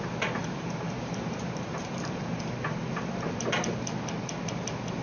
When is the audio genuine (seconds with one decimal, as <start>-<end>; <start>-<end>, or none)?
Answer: 0.0-0.4; 3.4-5.0